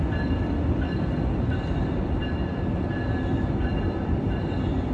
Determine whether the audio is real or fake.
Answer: fake